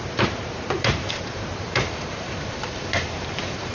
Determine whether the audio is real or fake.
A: fake